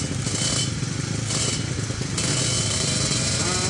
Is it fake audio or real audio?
real